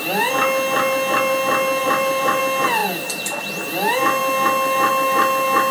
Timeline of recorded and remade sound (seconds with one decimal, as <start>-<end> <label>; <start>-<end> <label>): 0.0-1.8 recorded; 1.8-2.4 remade; 2.4-2.8 recorded; 2.8-3.4 remade; 3.4-5.7 recorded